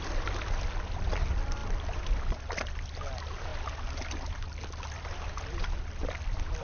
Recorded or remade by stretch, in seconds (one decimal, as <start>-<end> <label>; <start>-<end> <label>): 0.0-6.6 recorded